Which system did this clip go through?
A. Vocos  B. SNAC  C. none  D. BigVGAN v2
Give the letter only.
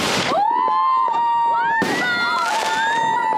C